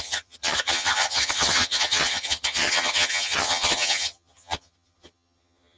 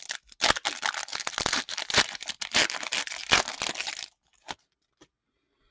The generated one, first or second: first